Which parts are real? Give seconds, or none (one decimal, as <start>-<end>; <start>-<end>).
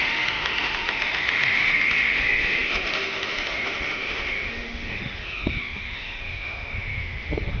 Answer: none